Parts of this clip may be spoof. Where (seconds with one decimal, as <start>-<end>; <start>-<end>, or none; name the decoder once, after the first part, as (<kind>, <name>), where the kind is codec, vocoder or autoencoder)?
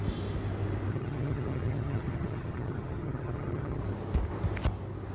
0.9-3.8 (vocoder, HiFi-GAN)